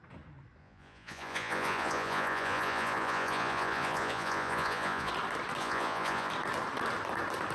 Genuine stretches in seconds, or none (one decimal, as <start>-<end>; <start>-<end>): 0.0-0.6; 5.1-5.6; 6.3-7.5